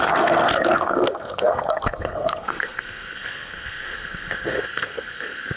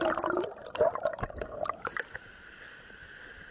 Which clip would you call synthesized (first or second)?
first